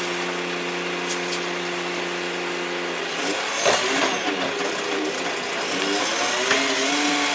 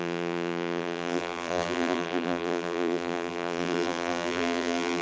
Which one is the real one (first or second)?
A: first